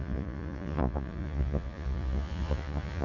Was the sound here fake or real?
fake